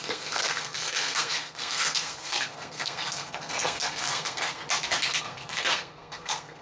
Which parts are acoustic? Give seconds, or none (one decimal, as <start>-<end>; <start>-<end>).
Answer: 4.6-5.2